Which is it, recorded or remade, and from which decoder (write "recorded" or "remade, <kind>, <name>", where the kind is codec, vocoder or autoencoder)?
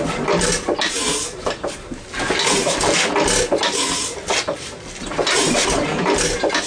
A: recorded